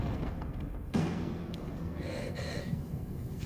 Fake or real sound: fake